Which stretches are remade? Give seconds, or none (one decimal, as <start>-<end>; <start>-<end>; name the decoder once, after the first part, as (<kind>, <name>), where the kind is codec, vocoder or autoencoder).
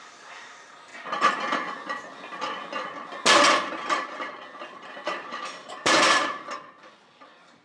0.0-0.9 (vocoder, BigVGAN v2); 3.7-7.6